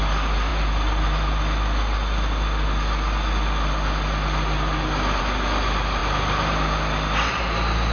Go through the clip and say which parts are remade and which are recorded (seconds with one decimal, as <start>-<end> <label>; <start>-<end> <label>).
0.0-7.9 recorded